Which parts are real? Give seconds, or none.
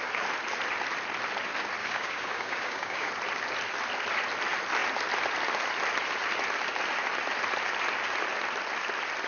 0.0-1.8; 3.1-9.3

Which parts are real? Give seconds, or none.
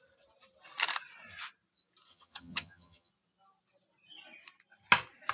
0.0-2.1; 3.1-5.3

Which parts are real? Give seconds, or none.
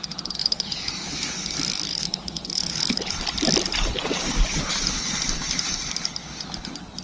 0.0-0.4; 0.9-1.9; 3.1-7.0